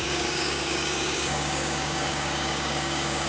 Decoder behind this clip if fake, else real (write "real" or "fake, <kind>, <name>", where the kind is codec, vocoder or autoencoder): fake, codec, DAC